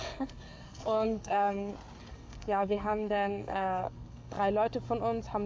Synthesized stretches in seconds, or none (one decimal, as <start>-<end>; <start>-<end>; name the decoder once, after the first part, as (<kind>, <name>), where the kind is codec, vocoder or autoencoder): 0.0-1.7 (codec, SNAC); 2.1-4.3